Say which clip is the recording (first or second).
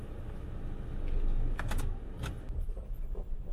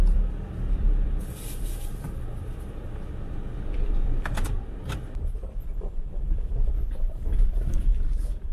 first